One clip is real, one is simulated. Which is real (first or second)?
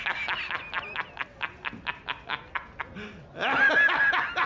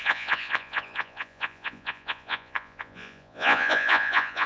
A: first